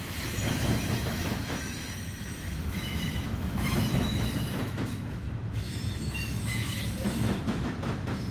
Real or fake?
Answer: fake